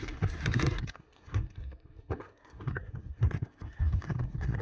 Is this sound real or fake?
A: fake